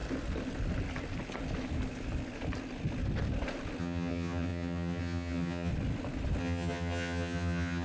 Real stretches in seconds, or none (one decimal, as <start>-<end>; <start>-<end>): 0.0-3.8; 5.7-6.4